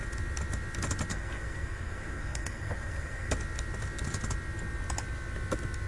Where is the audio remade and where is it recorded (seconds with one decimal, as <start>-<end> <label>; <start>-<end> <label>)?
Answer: 0.0-1.1 recorded; 1.1-3.3 remade; 3.3-5.9 recorded